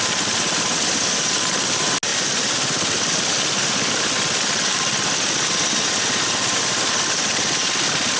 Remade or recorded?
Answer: recorded